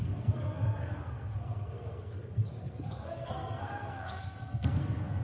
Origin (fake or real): fake